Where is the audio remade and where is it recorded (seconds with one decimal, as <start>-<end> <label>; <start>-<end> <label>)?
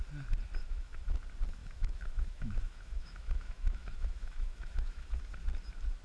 0.0-0.6 recorded; 0.6-1.2 remade; 1.2-1.6 recorded; 1.6-5.2 remade; 5.2-6.0 recorded